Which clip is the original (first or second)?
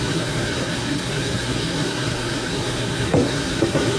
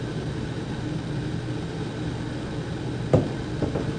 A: second